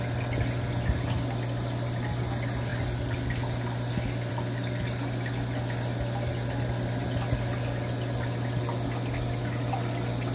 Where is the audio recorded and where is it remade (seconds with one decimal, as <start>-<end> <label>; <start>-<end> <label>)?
0.0-10.3 recorded